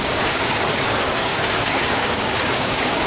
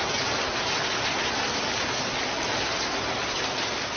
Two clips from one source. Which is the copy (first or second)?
first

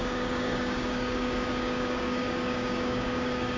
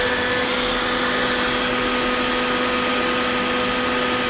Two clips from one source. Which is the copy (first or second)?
first